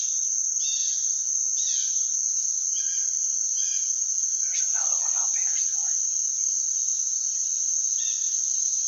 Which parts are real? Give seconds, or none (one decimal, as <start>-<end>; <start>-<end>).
0.0-8.9